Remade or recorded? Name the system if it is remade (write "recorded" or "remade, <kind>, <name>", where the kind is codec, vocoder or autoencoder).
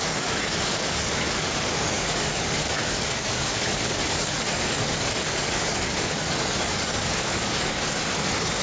remade, codec, DAC